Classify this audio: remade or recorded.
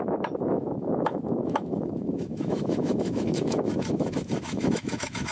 remade